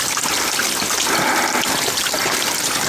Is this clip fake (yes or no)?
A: no